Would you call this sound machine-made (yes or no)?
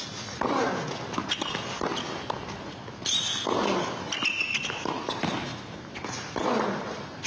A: no